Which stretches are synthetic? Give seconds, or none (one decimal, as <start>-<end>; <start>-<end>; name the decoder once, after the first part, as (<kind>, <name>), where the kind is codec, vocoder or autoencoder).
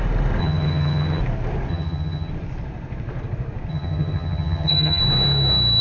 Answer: 0.4-1.2 (vocoder, HiFi-GAN); 1.7-2.3; 3.7-5.0